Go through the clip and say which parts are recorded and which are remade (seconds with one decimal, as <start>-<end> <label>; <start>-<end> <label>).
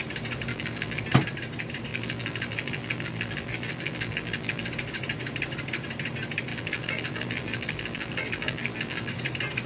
0.0-0.5 recorded; 0.5-1.0 remade; 1.0-1.9 recorded; 1.9-4.7 remade; 4.7-6.5 recorded; 6.5-9.1 remade; 9.1-9.7 recorded